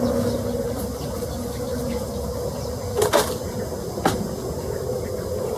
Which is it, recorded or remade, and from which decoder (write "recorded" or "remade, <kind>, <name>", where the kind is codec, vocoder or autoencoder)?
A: recorded